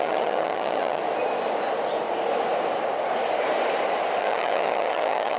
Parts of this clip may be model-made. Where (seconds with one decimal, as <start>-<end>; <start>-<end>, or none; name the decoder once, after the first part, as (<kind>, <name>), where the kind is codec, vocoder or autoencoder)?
0.0-1.0 (vocoder, HiFi-GAN); 4.2-5.4

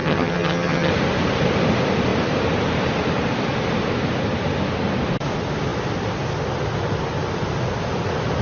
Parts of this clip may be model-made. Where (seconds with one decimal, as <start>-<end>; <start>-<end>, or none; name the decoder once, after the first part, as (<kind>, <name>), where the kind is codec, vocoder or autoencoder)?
0.0-0.9 (vocoder, HiFi-GAN)

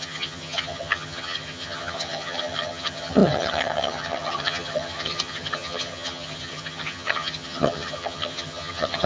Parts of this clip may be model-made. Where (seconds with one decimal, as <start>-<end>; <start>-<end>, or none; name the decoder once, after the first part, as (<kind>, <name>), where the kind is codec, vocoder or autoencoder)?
0.0-9.1 (vocoder, HiFi-GAN)

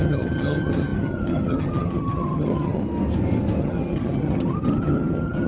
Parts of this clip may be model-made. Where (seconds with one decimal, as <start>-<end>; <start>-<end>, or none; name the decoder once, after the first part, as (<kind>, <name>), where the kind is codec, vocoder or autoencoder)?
0.0-2.8 (vocoder, HiFi-GAN); 3.6-5.5